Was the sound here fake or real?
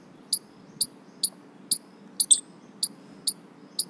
real